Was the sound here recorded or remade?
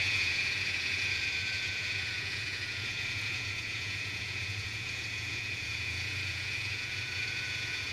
remade